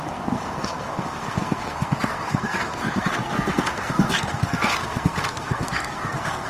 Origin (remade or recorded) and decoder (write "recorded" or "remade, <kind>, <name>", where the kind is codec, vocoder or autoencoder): remade, codec, SNAC